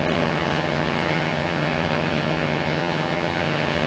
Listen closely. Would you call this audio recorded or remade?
remade